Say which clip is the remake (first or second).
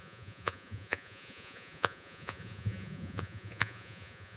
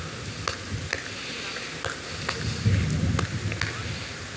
first